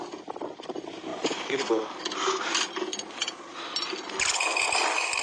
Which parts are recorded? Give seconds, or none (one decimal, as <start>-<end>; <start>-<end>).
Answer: 0.0-5.2

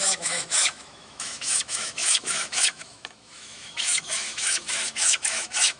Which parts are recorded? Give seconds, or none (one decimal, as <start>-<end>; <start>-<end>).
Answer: none

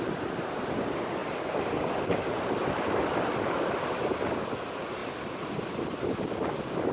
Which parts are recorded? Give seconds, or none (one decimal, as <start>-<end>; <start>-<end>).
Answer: 0.0-1.2; 4.1-5.0; 6.1-6.9

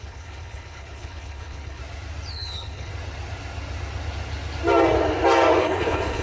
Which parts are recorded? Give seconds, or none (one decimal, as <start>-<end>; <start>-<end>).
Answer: 1.8-2.3; 2.9-5.6

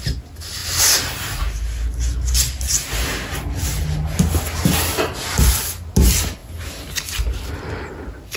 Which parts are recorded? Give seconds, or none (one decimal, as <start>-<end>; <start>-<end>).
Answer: 0.0-8.4

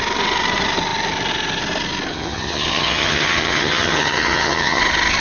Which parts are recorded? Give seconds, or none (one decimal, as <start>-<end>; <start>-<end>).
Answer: 0.0-2.1; 4.8-5.2

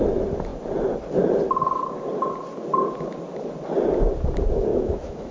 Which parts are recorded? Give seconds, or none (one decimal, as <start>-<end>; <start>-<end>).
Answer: 0.0-4.7